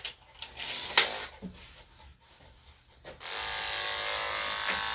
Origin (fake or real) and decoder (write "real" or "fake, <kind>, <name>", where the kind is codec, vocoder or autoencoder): real